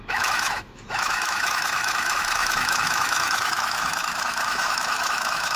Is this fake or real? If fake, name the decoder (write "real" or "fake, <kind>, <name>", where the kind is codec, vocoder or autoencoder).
fake, autoencoder, DAC-VAE